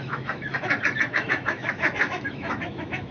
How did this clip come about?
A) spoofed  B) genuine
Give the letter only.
A